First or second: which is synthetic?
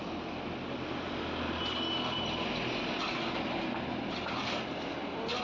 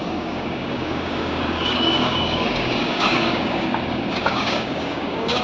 second